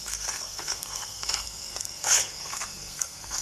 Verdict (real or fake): fake